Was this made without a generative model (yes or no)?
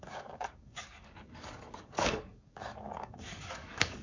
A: no